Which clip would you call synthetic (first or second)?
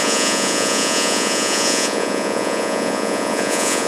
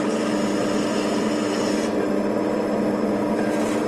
first